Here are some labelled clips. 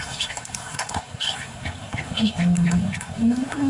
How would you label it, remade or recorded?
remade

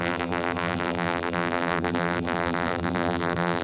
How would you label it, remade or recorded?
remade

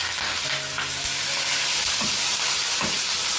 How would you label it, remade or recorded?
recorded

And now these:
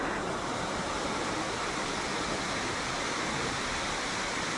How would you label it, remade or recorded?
recorded